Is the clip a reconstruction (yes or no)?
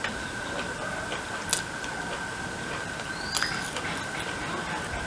no